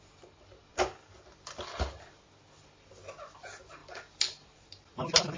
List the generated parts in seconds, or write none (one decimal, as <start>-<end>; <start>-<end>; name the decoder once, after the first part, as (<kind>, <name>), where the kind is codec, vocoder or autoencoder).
none